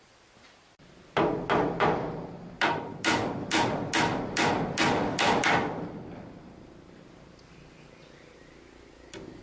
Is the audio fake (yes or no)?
no